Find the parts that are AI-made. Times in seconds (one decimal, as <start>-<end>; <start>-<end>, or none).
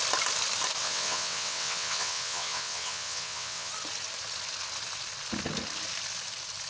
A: 0.8-3.7